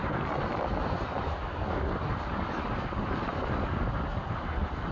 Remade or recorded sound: recorded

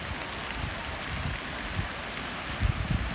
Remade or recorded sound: recorded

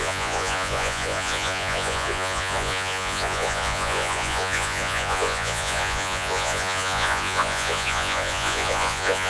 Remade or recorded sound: remade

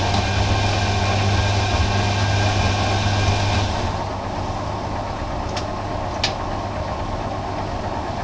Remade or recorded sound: recorded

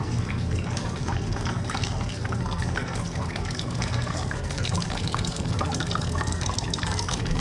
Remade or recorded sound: remade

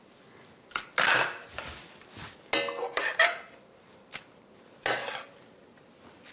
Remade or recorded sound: recorded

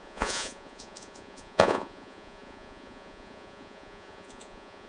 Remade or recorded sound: remade